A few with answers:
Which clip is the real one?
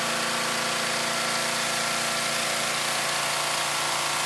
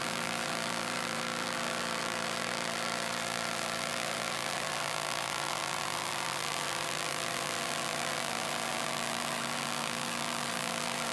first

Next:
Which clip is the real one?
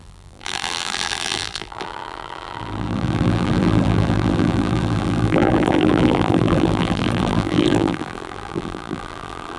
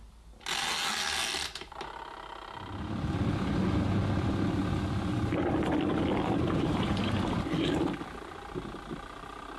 second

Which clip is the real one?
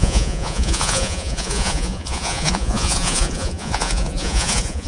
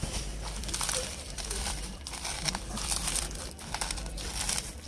second